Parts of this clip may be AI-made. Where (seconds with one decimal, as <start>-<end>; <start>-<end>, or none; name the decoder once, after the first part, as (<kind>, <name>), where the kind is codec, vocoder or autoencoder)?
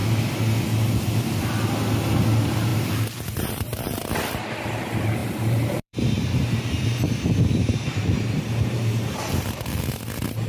2.7-4.0 (vocoder, BigVGAN v2); 5.2-9.8